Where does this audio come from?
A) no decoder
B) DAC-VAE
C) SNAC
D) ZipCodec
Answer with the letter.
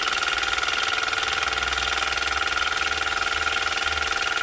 A